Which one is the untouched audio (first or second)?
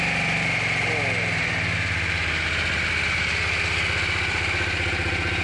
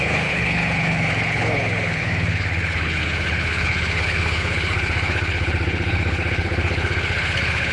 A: first